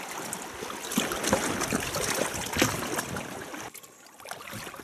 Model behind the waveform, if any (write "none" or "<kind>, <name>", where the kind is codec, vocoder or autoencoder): none